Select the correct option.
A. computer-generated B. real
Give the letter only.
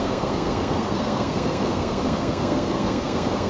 A